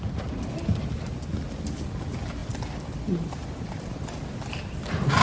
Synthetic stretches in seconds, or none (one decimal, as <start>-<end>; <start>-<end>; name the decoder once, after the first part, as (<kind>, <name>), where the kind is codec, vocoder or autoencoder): none